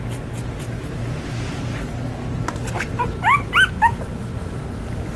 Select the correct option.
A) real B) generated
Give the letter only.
A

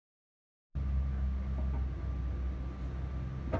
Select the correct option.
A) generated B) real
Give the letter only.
B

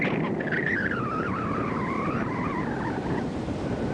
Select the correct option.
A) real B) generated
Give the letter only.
B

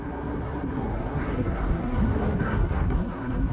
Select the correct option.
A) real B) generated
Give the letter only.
B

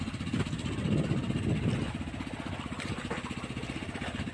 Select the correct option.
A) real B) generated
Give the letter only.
A